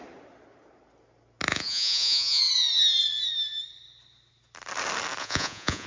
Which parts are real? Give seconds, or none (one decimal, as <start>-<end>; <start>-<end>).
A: 0.0-1.5; 2.4-5.2